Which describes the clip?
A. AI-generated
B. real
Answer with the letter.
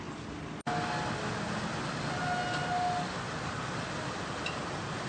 B